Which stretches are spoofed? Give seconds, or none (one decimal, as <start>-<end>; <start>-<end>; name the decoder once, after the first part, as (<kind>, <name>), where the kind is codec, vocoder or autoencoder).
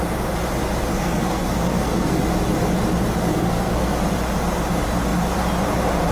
0.9-2.2 (codec, SNAC); 3.3-3.9